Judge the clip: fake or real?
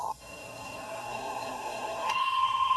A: fake